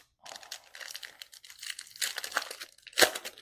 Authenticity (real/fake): real